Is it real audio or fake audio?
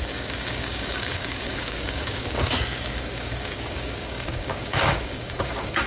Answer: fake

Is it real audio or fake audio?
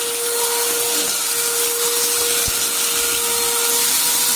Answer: real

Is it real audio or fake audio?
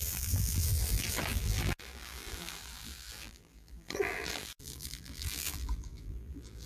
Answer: fake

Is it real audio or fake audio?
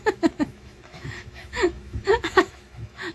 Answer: fake